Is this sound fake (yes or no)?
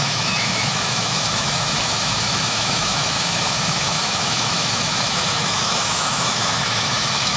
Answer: yes